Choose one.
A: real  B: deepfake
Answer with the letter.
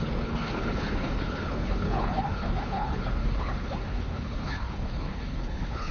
B